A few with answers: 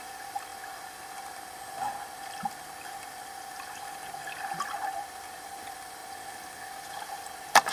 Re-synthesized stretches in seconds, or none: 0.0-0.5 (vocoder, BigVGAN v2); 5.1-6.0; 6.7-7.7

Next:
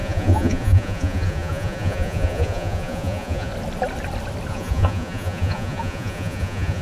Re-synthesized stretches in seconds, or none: 0.0-3.5 (vocoder, Vocos); 4.5-6.8

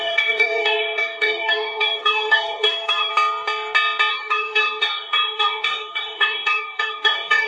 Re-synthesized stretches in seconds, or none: 0.0-3.1 (codec, DAC); 4.1-7.5

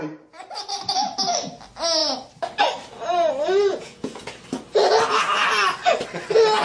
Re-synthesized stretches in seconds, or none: 3.7-4.4 (vocoder, Vocos)

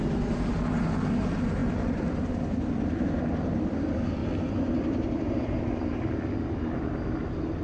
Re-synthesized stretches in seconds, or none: 1.6-3.8 (vocoder, BigVGAN v2); 4.2-6.6

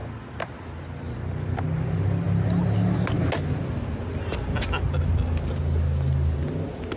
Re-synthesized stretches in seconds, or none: none

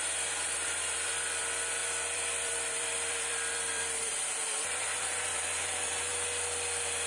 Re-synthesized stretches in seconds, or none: 0.0-6.1 (vocoder, BigVGAN v2)